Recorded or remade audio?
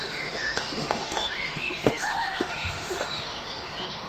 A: remade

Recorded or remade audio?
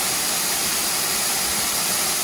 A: recorded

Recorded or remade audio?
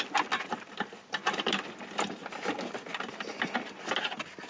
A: recorded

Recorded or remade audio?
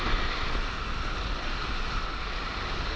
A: recorded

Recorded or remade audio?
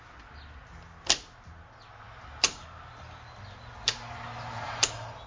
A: recorded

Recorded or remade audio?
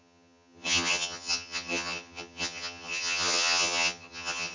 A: remade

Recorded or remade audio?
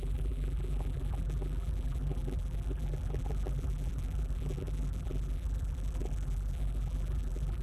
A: remade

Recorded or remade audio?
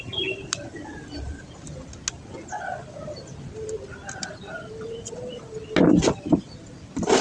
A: recorded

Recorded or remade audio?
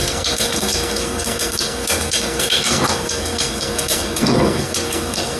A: remade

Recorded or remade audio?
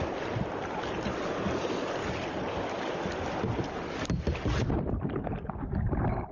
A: recorded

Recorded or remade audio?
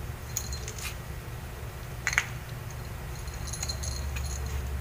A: recorded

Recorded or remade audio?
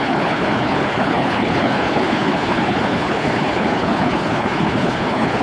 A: remade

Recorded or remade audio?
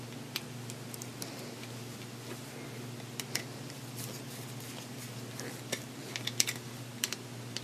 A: recorded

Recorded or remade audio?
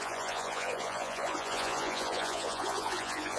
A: remade